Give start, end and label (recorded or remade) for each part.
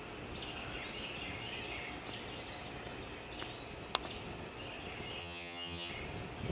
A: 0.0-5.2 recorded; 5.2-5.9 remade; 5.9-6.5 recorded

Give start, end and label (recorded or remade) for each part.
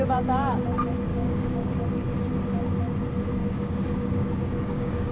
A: 0.0-1.1 recorded; 1.1-1.7 remade; 1.7-3.4 recorded; 3.4-5.1 remade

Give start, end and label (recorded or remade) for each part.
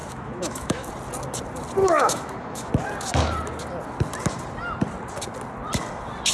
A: 0.0-0.9 remade; 0.9-1.8 recorded; 1.8-2.7 remade; 2.7-6.3 recorded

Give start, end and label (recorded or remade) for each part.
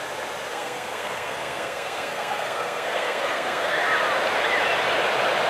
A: 0.0-0.5 recorded; 0.5-3.8 remade; 3.8-5.5 recorded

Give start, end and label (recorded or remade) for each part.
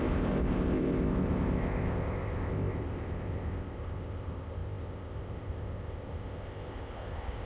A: 0.0-7.5 remade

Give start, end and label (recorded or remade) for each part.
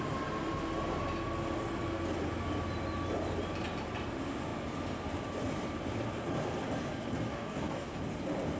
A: 0.0-7.3 recorded; 7.3-8.0 remade; 8.0-8.6 recorded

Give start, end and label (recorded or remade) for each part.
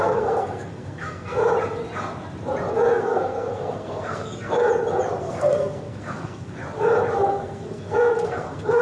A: 0.0-1.4 remade; 1.4-2.7 recorded; 2.7-4.6 remade; 4.6-5.2 recorded; 5.2-6.6 remade; 6.6-7.3 recorded; 7.3-8.8 remade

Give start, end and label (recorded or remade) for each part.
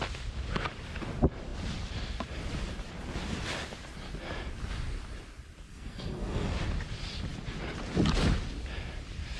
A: 0.0-5.7 recorded; 5.7-6.5 remade; 6.5-9.4 recorded